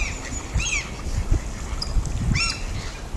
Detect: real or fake real